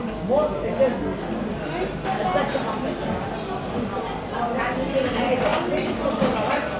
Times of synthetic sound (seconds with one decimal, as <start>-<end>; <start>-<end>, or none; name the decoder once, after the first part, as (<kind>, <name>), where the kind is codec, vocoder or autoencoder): none